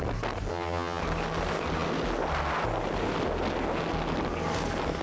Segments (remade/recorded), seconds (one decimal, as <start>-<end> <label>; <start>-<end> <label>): 0.0-0.5 recorded; 0.5-1.0 remade; 1.0-5.0 recorded